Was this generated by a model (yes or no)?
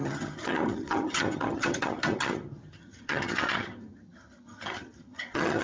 yes